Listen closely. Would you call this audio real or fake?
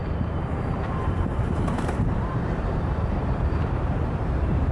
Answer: fake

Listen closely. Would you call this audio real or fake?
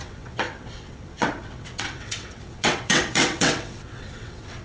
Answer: fake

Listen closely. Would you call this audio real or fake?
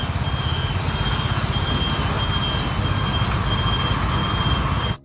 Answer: real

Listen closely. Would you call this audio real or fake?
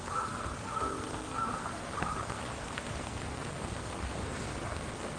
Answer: fake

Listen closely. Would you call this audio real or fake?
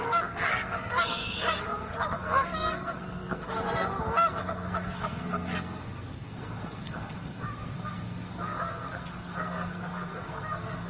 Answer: fake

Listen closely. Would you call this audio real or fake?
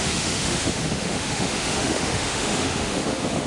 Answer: fake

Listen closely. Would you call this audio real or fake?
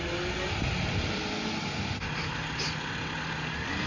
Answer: real